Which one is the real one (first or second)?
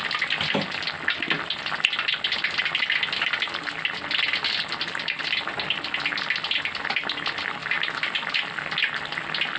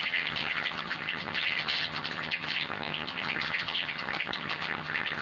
first